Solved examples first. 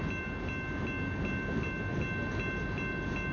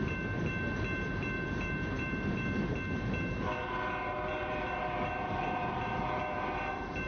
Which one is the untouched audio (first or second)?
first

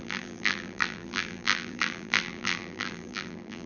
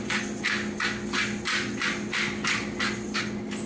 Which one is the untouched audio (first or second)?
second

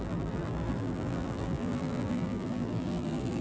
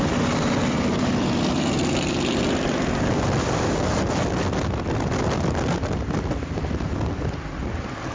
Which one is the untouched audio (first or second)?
second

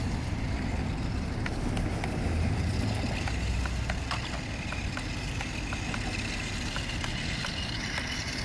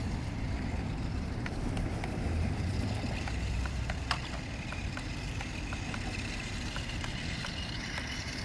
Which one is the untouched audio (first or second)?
first